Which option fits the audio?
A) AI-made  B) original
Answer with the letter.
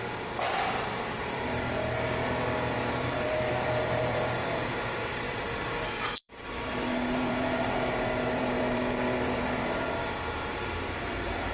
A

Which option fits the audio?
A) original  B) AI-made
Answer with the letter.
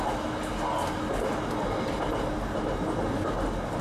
A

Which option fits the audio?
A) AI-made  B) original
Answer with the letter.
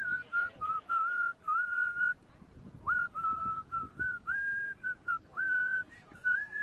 A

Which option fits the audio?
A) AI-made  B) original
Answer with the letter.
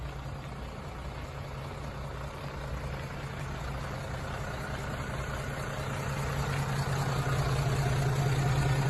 B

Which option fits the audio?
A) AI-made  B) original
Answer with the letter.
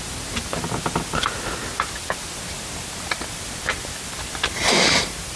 B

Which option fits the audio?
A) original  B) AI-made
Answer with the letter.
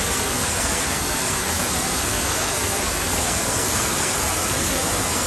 B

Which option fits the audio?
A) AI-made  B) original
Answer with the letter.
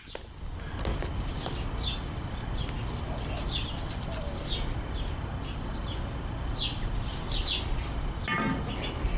B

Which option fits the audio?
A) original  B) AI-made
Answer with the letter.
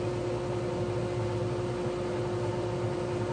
A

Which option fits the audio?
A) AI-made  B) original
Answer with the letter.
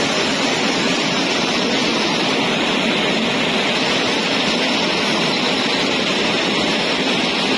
B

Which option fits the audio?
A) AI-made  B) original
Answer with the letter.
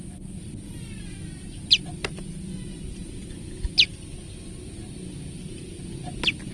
B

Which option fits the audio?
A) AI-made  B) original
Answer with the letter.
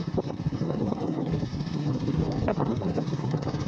A